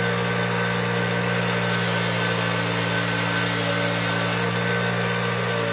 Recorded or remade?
recorded